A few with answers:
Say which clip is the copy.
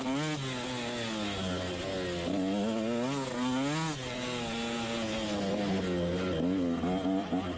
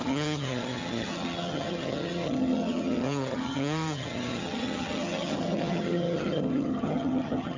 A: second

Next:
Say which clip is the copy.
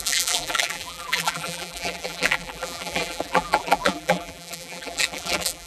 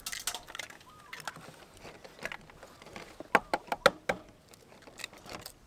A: first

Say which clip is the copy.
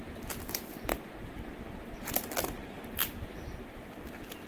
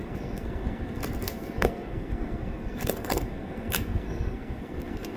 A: second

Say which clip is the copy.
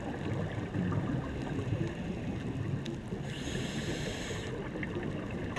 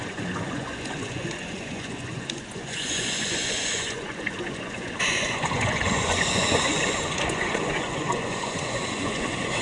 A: second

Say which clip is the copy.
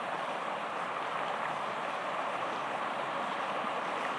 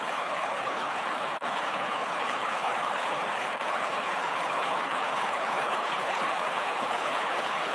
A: second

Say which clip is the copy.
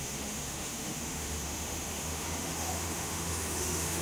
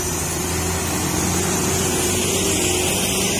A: first